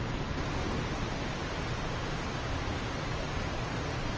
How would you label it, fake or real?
real